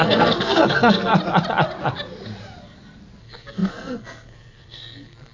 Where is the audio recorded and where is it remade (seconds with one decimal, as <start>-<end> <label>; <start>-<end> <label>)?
0.0-1.1 remade; 1.1-3.2 recorded; 3.2-5.3 remade